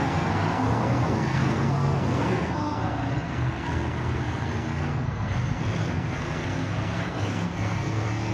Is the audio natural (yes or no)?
no